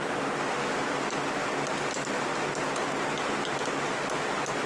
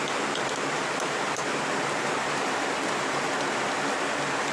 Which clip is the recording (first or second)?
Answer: first